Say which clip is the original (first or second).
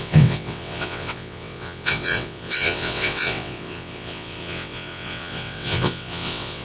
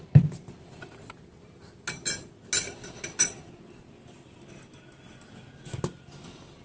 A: second